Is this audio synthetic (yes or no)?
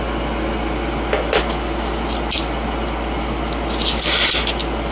no